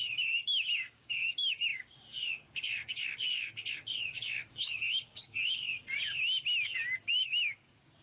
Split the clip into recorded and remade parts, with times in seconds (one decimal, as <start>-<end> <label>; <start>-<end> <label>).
0.0-5.7 remade; 5.7-7.1 recorded; 7.1-8.0 remade